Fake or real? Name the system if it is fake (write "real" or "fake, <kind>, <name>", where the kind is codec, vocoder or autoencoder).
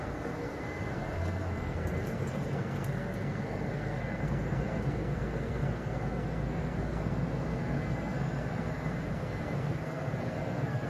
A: fake, codec, SNAC